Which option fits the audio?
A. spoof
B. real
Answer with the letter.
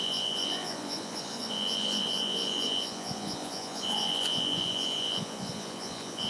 A